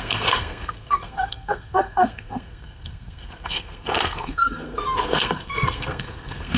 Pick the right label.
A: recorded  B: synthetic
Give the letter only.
B